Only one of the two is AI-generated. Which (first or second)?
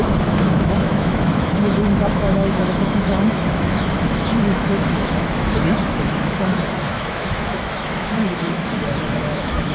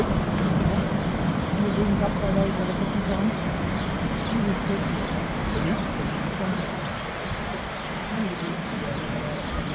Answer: first